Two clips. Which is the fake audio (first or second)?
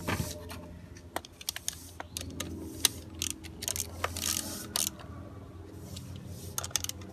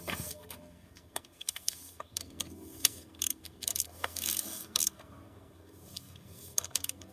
second